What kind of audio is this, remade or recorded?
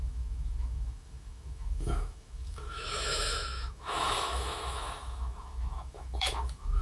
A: remade